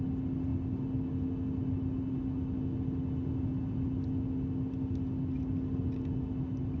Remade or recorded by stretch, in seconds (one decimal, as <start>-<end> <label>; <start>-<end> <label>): 0.0-6.8 recorded